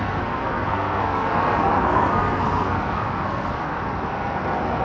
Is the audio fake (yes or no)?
yes